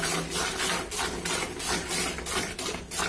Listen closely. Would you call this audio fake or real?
real